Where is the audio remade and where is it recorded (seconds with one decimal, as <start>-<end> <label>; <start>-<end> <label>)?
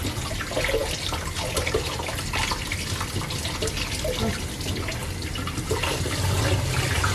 0.0-7.1 recorded